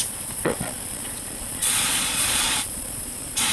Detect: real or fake fake